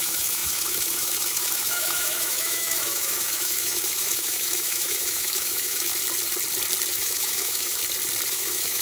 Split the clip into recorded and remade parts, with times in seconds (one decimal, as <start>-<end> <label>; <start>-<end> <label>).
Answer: 0.0-5.9 remade; 5.9-6.9 recorded; 6.9-7.8 remade; 7.8-8.3 recorded; 8.3-8.8 remade